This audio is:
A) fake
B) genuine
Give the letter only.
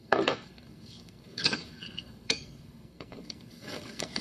A